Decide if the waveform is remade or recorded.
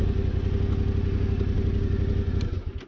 recorded